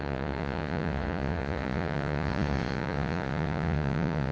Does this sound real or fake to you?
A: fake